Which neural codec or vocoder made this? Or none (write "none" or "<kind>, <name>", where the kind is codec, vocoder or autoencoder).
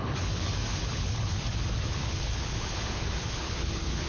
codec, HILCodec